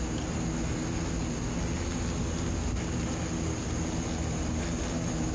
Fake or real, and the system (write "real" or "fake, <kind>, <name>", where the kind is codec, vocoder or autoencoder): real